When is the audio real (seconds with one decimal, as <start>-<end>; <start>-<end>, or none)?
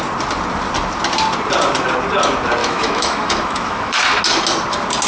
0.0-2.6; 4.2-5.1